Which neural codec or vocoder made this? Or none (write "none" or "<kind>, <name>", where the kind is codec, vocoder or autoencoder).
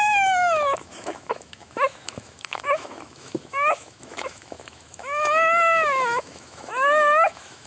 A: autoencoder, DAC-VAE